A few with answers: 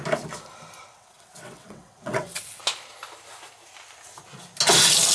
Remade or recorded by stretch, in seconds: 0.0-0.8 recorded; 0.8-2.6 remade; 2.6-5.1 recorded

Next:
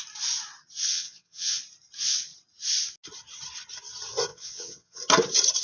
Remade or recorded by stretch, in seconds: 0.0-0.9 recorded; 0.9-1.6 remade; 1.6-4.3 recorded; 4.3-5.0 remade; 5.0-5.6 recorded

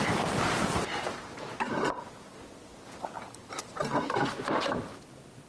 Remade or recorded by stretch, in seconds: 0.0-5.5 recorded

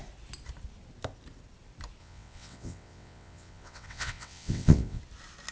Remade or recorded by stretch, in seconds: 0.0-2.0 recorded; 2.0-5.0 remade; 5.0-5.5 recorded